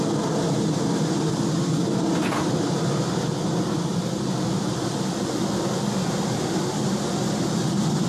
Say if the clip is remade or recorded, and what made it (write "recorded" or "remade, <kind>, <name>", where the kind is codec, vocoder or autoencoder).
recorded